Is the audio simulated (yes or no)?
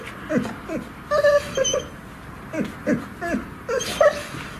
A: no